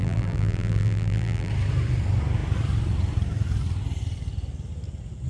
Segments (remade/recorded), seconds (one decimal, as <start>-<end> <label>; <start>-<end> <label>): 0.0-1.5 remade; 1.5-5.3 recorded